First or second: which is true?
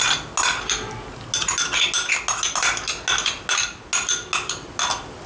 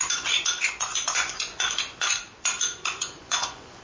first